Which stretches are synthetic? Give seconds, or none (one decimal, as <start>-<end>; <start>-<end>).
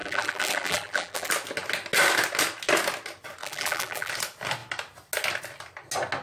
0.0-1.3; 3.4-4.1